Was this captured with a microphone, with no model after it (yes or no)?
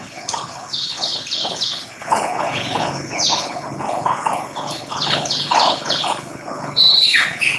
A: no